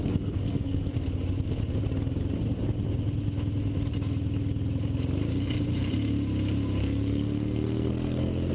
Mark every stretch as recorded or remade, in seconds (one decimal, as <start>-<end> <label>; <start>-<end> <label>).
0.0-0.9 remade; 0.9-6.8 recorded; 6.8-8.5 remade